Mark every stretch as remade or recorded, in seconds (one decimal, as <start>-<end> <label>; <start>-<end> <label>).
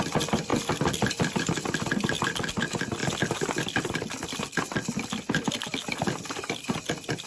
0.0-7.3 recorded